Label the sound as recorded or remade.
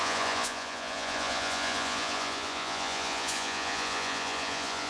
remade